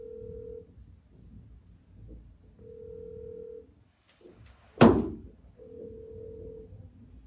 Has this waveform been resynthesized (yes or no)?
no